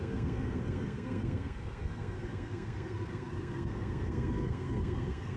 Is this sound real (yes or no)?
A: no